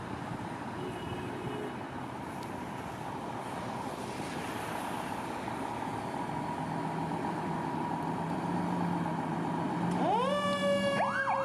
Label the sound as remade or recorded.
recorded